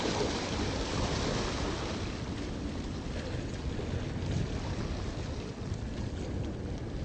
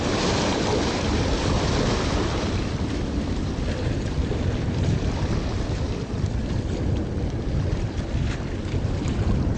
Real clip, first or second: first